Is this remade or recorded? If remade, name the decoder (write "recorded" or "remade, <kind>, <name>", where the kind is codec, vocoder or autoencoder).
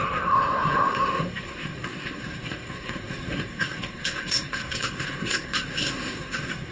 remade, codec, SNAC